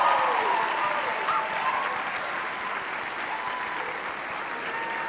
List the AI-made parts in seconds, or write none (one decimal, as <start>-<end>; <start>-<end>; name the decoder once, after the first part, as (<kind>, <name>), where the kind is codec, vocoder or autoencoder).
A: none